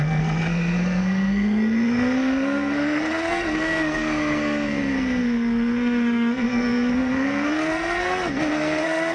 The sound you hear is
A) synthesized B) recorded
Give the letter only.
A